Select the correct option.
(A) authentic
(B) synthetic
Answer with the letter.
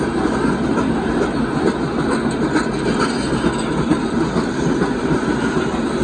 A